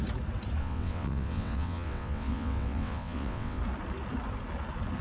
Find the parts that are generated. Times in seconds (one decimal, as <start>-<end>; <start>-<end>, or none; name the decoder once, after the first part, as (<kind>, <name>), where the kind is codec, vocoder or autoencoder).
0.6-3.6 (vocoder, WaveNeXt)